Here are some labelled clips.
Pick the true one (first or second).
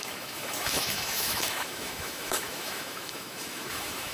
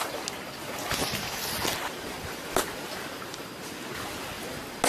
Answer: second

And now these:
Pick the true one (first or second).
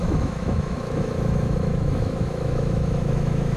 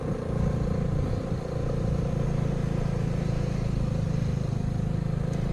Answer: second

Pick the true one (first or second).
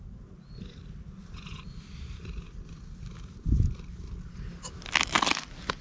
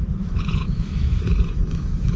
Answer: first